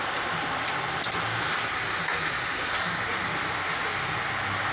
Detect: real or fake real